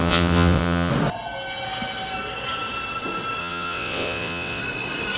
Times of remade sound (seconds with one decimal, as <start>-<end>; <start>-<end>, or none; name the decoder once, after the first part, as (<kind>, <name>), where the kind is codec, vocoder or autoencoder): 0.0-0.9 (vocoder, WaveNeXt); 3.4-4.6